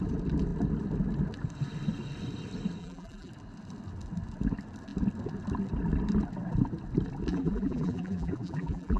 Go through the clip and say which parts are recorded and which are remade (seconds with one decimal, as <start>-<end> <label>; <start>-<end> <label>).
0.0-2.8 recorded; 2.8-3.3 remade; 3.3-7.3 recorded; 7.3-9.0 remade